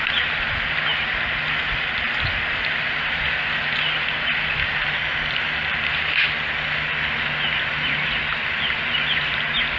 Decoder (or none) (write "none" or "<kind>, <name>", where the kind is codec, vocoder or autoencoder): none